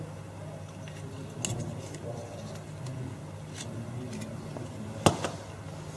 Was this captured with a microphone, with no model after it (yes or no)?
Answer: yes